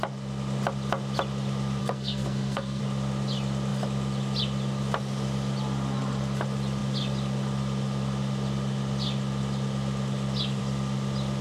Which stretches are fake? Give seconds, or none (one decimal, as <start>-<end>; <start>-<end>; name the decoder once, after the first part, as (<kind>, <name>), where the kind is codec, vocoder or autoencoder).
1.8-2.8 (codec, SNAC)